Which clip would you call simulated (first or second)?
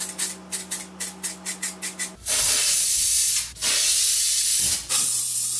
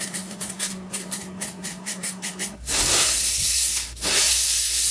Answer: second